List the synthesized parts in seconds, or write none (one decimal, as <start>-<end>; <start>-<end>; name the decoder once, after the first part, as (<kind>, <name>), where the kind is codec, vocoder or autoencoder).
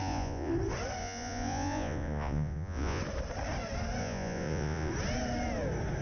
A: 0.0-0.5 (vocoder, Vocos); 1.0-3.0; 4.0-4.9